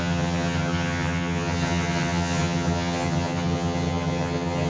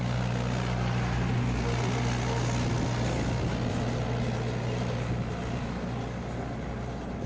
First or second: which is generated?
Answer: first